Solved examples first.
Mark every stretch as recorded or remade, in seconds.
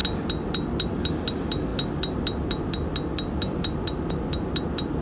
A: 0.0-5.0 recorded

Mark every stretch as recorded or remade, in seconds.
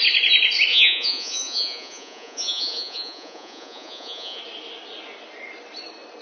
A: 0.0-0.7 recorded; 0.7-4.4 remade; 4.4-6.2 recorded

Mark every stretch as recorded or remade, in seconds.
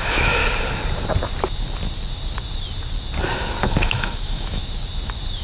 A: 0.0-0.4 remade; 0.4-3.6 recorded; 3.6-4.6 remade; 4.6-5.4 recorded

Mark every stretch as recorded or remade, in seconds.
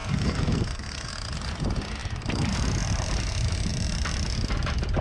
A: 0.0-1.1 remade; 1.1-5.0 recorded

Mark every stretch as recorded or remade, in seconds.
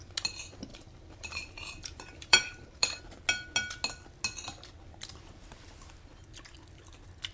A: 0.0-0.7 recorded; 0.7-3.0 remade; 3.0-7.3 recorded